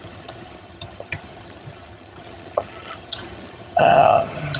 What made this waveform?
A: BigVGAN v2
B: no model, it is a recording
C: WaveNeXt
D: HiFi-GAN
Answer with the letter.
D